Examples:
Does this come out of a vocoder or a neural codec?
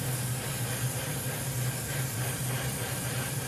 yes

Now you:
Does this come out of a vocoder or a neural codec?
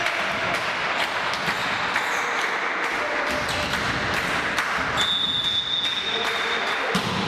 no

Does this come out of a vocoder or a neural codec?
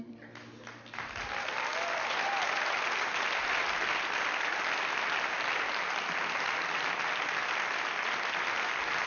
no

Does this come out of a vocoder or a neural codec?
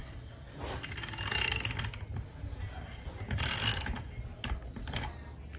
no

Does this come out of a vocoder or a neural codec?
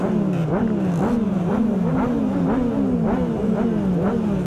no